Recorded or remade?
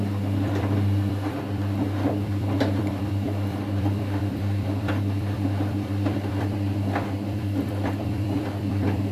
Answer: remade